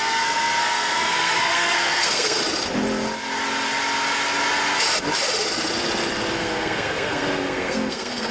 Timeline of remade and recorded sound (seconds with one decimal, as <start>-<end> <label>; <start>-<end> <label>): 0.0-2.4 remade; 2.4-6.3 recorded; 6.3-8.3 remade